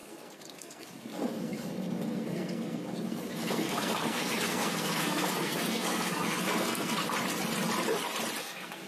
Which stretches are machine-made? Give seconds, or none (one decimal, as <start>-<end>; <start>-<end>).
0.0-7.0; 8.4-8.9